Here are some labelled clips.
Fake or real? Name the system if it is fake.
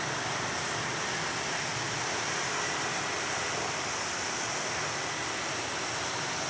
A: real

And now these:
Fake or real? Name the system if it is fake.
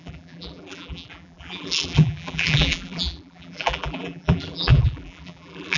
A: fake, vocoder, BigVGAN v2